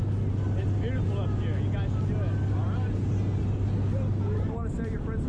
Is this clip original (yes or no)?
yes